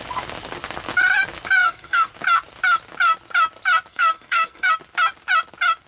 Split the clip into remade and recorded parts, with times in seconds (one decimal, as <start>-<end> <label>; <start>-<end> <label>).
0.0-1.6 recorded; 1.6-2.1 remade; 2.1-3.9 recorded; 3.9-4.7 remade; 4.7-5.9 recorded